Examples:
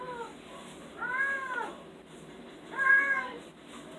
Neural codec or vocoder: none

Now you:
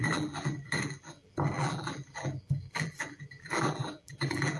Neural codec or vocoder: vocoder, BigVGAN v2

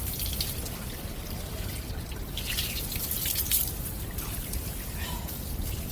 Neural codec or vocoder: none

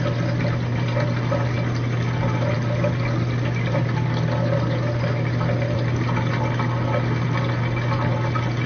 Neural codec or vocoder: none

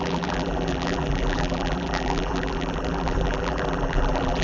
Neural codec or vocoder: vocoder, BigVGAN v2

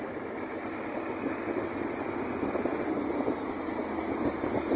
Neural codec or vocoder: none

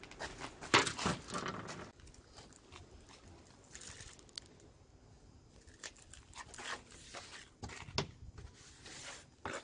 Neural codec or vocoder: none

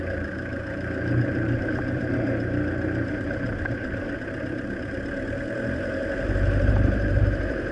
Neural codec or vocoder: vocoder, BigVGAN v2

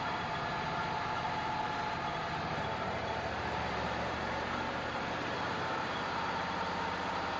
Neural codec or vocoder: vocoder, BigVGAN v2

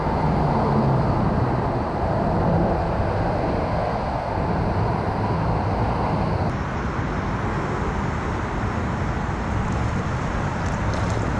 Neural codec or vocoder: none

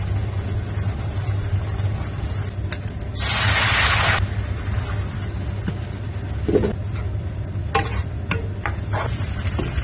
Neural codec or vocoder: none